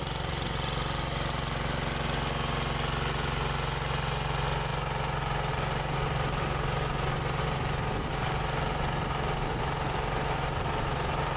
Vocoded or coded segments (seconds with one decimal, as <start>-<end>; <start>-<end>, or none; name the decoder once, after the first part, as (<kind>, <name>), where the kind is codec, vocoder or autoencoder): none

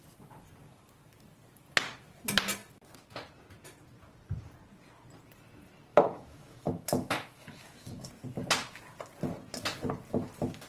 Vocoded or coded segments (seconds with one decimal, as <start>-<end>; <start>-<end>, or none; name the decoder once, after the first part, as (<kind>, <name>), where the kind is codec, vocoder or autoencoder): 5.9-8.1 (autoencoder, DAC-VAE)

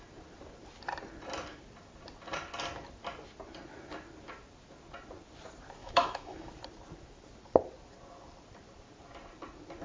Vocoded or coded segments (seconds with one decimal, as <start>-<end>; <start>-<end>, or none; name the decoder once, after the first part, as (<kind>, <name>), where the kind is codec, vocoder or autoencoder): 5.8-6.5 (autoencoder, DAC-VAE)

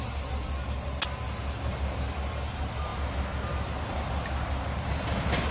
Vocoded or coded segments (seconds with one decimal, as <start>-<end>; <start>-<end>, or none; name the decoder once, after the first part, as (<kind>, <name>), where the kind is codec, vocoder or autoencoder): none

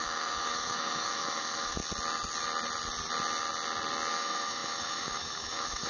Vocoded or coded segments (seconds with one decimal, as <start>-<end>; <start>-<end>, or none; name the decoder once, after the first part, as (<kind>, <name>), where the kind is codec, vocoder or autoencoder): 0.0-1.8 (autoencoder, DAC-VAE); 4.1-5.9

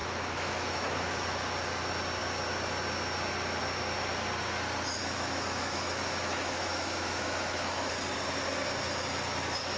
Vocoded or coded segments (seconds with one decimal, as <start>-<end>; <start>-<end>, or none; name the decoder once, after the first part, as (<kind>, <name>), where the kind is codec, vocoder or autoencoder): 0.0-1.3 (autoencoder, DAC-VAE); 5.0-7.9